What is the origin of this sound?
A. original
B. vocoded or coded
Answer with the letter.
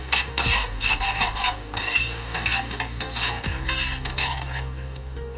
B